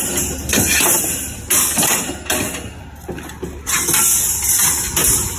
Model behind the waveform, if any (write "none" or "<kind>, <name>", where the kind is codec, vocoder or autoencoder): none